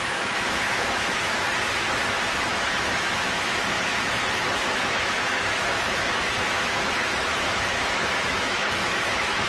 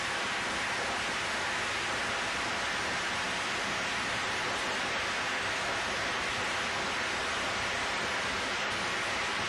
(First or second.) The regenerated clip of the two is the first